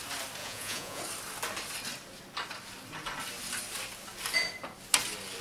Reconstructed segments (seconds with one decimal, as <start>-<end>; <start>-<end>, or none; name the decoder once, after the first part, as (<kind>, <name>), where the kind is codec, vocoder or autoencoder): 0.4-1.0 (vocoder, Vocos)